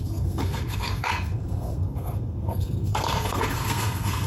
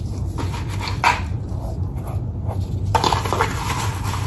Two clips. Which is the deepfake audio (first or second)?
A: first